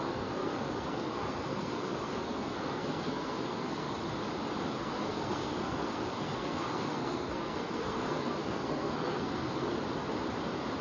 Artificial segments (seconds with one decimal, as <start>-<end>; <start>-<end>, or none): 0.0-3.9; 4.7-9.7